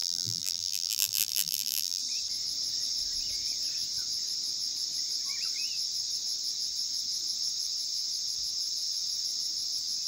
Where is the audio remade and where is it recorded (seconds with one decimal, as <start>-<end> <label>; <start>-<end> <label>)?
0.0-2.0 remade; 2.0-10.1 recorded